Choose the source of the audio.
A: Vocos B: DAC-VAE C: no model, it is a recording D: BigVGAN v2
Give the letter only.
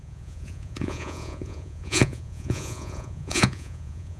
A